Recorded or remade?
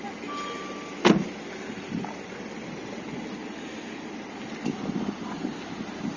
recorded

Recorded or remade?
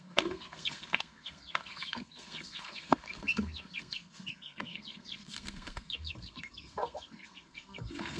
remade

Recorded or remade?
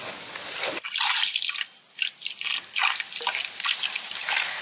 recorded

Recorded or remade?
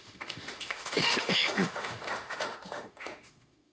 remade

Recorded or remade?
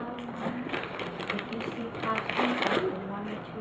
remade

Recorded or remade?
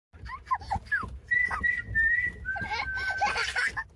recorded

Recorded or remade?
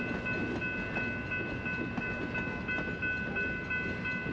recorded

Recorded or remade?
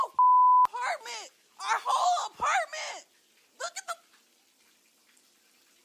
recorded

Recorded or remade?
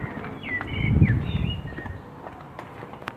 recorded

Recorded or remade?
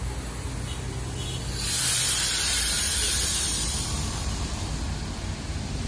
recorded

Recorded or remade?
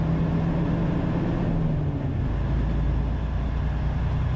recorded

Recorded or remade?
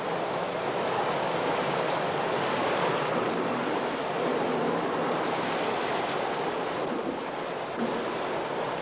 recorded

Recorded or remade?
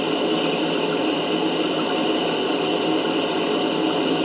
recorded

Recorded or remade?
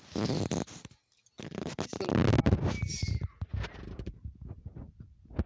recorded